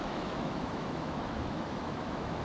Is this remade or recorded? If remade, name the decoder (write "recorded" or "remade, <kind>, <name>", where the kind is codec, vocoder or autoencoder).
remade, autoencoder, DAC-VAE